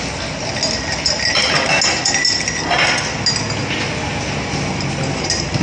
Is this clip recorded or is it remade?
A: recorded